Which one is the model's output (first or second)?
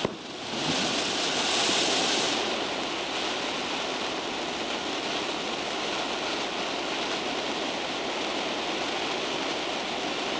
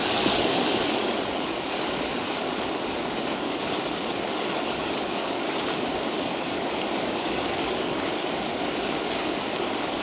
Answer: second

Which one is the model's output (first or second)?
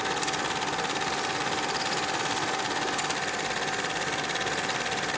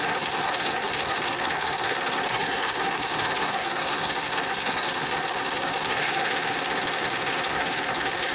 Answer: second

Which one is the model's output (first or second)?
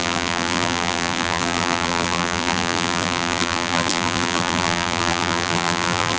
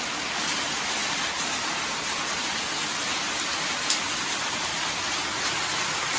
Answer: first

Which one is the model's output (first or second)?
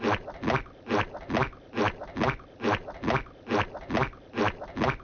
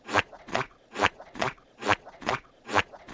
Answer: second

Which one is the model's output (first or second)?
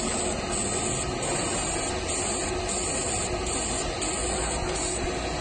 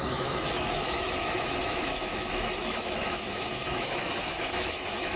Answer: second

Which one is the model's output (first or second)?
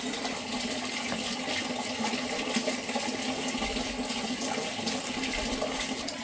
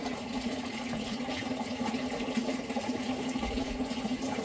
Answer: second